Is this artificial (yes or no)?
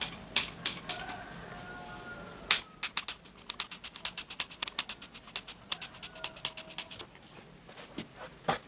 no